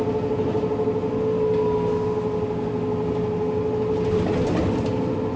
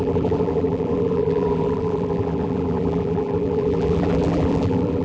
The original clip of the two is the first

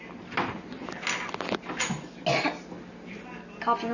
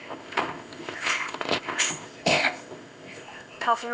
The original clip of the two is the first